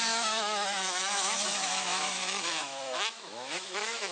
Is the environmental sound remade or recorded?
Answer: remade